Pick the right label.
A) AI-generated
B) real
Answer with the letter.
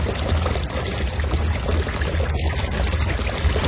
B